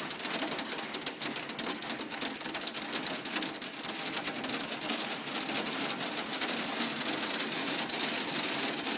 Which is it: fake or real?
real